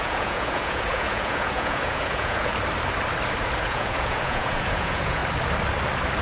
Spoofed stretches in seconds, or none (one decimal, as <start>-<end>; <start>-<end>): 0.0-2.5; 3.6-5.2